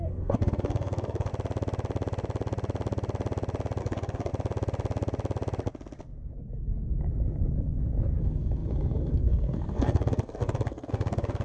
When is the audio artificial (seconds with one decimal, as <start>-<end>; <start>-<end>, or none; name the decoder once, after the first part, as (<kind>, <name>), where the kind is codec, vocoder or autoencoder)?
0.0-1.3 (codec, SNAC); 3.8-4.3; 8.2-11.4